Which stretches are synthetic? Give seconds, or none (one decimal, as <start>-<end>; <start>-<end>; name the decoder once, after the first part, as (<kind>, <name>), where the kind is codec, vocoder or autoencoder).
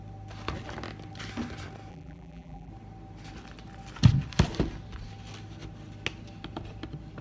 1.9-2.7 (vocoder, BigVGAN v2)